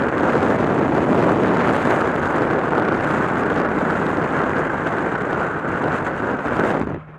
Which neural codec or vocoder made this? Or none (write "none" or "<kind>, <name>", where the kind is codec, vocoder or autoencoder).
none